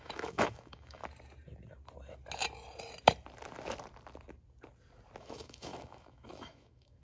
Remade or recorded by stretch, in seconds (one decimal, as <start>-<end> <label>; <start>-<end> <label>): 0.0-1.0 remade; 1.0-5.2 recorded; 5.2-7.0 remade